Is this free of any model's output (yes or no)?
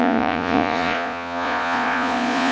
no